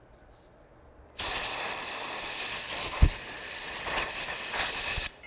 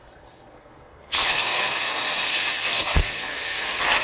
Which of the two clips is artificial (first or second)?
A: second